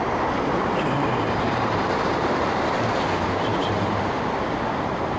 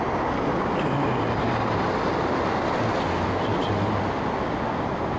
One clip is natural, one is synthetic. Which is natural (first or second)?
second